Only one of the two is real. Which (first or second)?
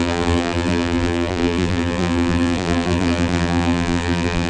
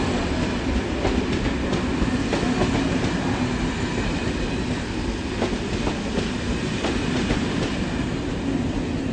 second